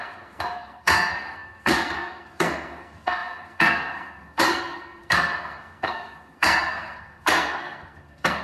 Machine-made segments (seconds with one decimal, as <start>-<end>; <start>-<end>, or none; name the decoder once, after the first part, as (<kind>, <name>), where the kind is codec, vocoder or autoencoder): 0.0-8.4 (codec, SNAC)